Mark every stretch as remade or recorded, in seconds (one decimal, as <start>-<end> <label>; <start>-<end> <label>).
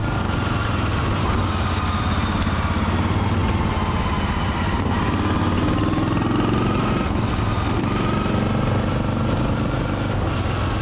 0.0-10.8 recorded